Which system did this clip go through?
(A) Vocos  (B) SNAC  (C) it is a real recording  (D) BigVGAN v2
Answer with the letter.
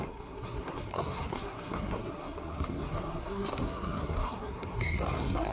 B